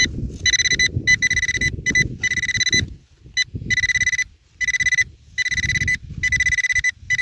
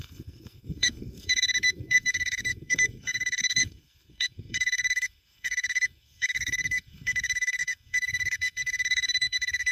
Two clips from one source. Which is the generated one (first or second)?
second